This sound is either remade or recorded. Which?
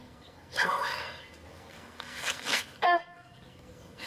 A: remade